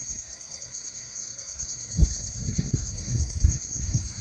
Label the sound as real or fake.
fake